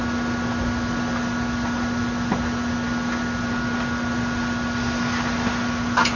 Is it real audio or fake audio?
real